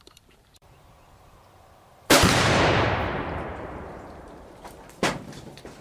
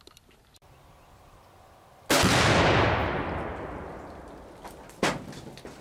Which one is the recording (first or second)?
second